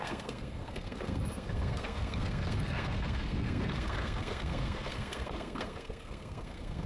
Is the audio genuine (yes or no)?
no